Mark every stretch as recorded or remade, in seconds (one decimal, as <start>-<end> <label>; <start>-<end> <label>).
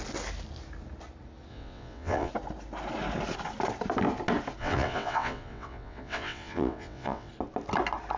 0.0-1.5 recorded; 1.5-2.3 remade; 2.3-4.6 recorded; 4.6-7.3 remade; 7.3-8.2 recorded